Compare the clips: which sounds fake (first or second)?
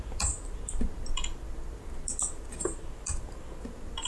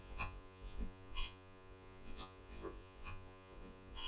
second